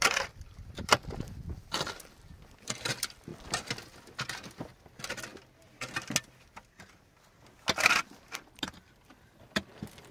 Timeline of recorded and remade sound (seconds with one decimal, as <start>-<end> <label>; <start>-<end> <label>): 0.0-3.3 remade; 3.3-4.7 recorded; 4.7-5.3 remade; 5.3-8.2 recorded; 8.2-10.1 remade